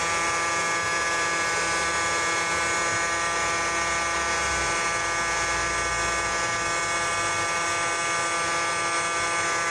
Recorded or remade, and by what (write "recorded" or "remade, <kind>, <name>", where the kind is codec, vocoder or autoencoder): recorded